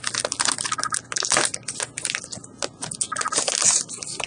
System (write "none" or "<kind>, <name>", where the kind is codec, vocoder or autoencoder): none